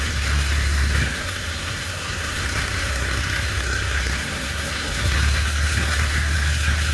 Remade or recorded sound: remade